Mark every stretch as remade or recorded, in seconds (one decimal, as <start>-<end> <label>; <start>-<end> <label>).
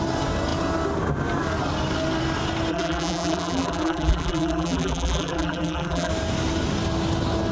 0.0-2.7 recorded; 2.7-6.1 remade; 6.1-7.5 recorded